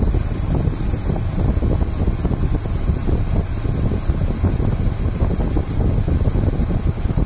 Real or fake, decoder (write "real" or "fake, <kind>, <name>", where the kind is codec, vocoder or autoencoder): real